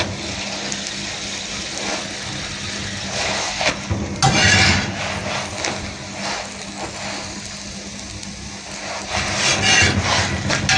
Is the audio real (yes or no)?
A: yes